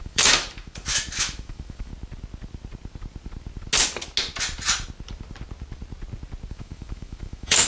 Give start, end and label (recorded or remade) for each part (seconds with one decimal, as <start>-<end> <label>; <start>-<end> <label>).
0.0-1.9 remade; 1.9-6.5 recorded; 6.5-7.7 remade